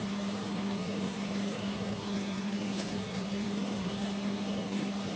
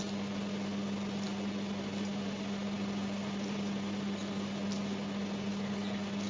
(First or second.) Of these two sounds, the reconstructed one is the first